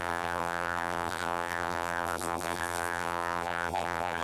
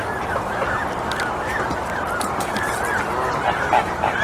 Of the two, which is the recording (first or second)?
second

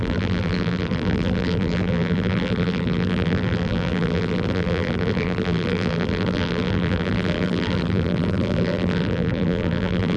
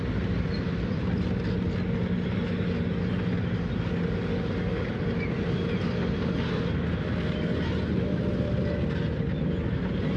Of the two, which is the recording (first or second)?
second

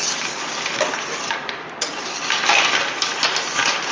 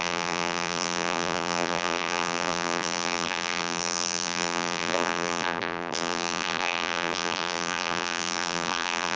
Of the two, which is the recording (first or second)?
first